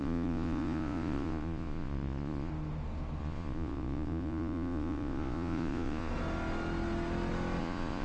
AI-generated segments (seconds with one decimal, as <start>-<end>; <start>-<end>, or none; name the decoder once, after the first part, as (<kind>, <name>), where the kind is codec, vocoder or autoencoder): 0.0-2.5 (vocoder, Vocos); 3.2-6.1; 7.6-8.0